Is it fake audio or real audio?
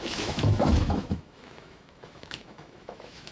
fake